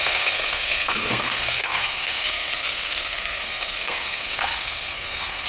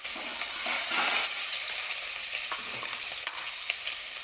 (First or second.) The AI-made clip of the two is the first